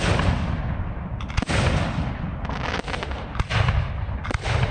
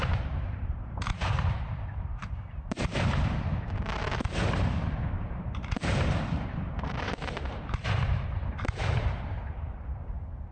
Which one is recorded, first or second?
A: first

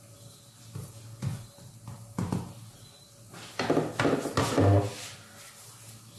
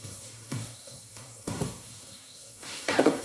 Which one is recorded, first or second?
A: first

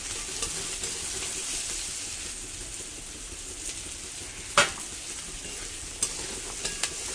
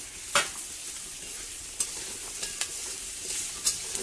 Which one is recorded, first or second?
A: first